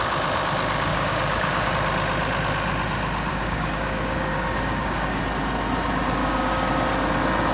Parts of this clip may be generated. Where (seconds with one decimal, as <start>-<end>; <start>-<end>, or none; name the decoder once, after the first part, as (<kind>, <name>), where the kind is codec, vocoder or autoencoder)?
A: 0.9-1.7 (codec, DAC); 3.3-5.2; 6.2-6.7